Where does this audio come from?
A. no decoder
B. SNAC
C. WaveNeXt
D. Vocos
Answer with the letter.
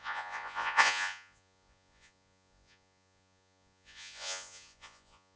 D